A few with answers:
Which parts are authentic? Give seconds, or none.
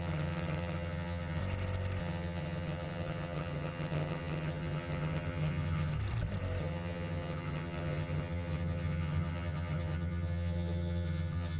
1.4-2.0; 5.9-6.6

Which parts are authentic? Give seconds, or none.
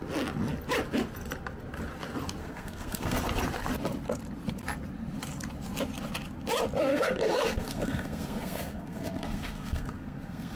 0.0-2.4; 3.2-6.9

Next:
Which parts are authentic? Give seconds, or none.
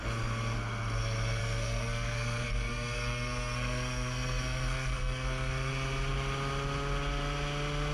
0.0-1.4; 5.7-7.9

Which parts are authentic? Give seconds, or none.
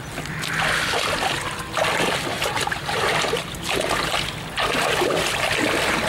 0.0-2.3; 4.1-6.1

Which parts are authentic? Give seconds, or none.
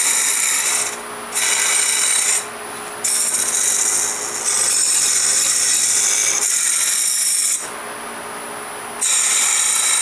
0.0-10.0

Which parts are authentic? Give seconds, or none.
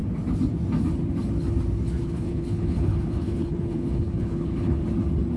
0.0-2.0; 4.8-5.4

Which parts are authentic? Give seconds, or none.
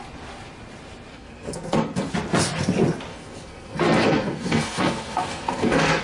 0.0-1.1; 2.1-3.1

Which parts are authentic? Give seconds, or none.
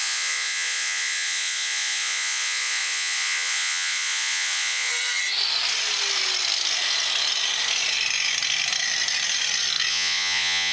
4.9-9.9